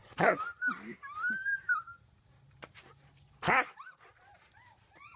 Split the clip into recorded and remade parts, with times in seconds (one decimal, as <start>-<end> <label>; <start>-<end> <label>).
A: 0.0-5.2 recorded

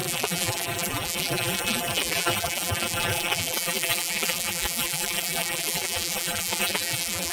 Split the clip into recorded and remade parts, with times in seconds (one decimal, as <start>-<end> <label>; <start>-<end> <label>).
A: 0.0-7.3 remade

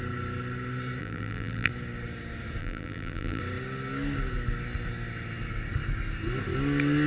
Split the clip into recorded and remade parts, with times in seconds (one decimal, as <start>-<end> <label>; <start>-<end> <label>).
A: 0.0-1.0 recorded; 1.0-1.7 remade; 1.7-2.6 recorded; 2.6-3.4 remade; 3.4-7.1 recorded

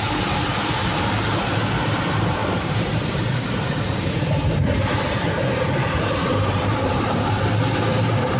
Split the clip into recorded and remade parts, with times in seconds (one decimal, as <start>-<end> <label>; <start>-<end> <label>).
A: 0.0-2.4 recorded; 2.4-7.2 remade; 7.2-8.4 recorded